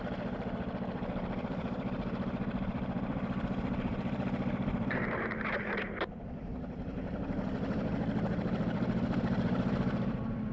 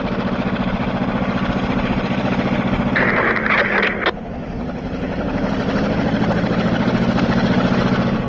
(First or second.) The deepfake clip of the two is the first